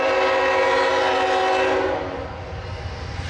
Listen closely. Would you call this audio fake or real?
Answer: real